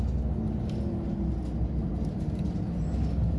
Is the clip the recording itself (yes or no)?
yes